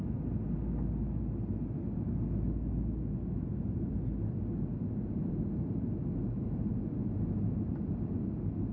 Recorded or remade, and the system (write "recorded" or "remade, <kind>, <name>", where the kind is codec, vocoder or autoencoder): recorded